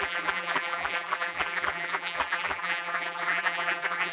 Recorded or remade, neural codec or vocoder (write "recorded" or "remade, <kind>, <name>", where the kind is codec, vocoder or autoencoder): remade, vocoder, BigVGAN v2